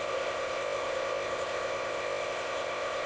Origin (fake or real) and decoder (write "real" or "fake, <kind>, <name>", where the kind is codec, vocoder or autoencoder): fake, codec, ZipCodec